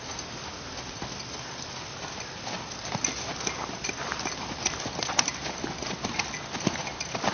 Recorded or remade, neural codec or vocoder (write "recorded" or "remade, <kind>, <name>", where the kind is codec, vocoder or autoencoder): recorded